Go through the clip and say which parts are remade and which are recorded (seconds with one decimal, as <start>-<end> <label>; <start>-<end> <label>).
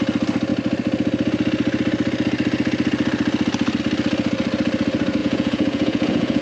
0.0-5.2 recorded; 5.2-6.4 remade